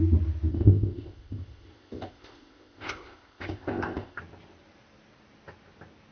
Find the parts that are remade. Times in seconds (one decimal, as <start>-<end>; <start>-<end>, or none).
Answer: 0.5-4.2